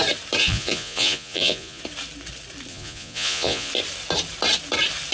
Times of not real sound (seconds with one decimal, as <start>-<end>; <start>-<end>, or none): 0.4-1.8; 2.7-3.7